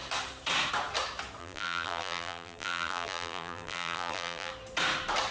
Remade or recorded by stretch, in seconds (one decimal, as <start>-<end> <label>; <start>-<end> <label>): 0.0-1.4 recorded; 1.4-4.5 remade; 4.5-5.3 recorded